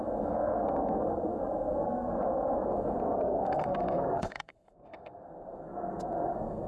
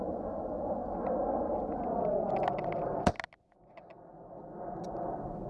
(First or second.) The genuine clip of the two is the second